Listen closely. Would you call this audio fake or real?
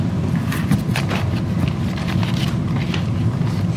real